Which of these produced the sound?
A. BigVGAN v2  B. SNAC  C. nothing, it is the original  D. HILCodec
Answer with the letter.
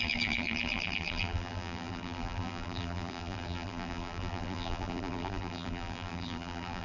A